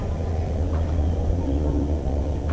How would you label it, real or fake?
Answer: fake